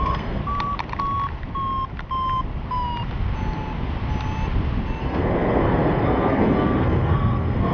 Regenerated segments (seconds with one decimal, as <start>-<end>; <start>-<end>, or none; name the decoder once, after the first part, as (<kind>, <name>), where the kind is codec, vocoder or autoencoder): 0.0-0.4 (codec, SNAC); 5.0-7.7